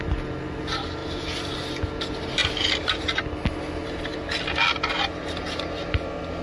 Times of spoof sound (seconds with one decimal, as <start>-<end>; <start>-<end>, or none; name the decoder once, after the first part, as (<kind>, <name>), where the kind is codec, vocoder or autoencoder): 1.0-1.5 (vocoder, BigVGAN v2)